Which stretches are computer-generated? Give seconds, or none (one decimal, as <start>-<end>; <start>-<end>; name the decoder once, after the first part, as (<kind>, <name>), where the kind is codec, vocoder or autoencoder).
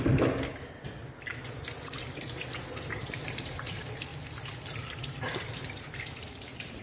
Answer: 0.0-1.0 (vocoder, BigVGAN v2); 2.7-4.1; 5.4-6.8